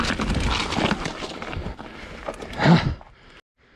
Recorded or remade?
recorded